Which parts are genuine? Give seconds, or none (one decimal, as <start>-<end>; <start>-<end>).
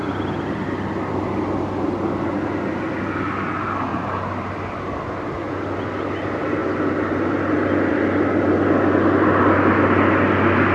0.0-3.9; 4.5-10.7